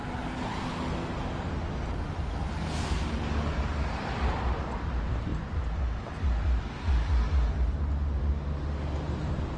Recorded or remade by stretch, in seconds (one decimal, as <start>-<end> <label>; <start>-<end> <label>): 0.0-9.6 recorded